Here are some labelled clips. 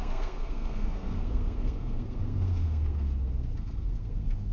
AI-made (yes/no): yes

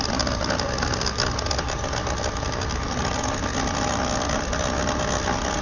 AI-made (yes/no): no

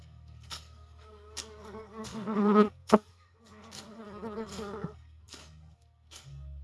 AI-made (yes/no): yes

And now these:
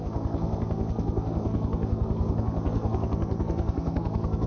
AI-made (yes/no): yes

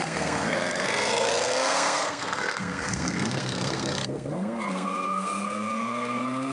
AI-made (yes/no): yes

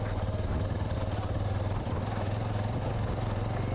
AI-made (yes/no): no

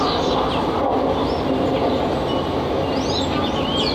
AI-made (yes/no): no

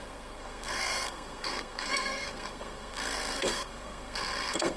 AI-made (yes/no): yes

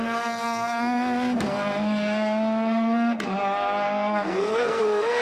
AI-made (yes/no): yes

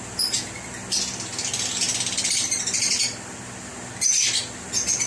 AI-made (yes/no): no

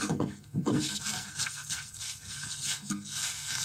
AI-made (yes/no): yes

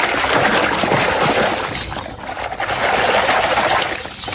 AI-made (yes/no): no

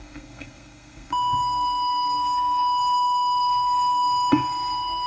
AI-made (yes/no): yes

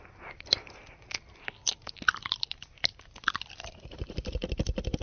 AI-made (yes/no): no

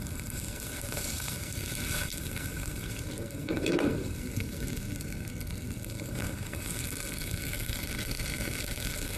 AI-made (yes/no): yes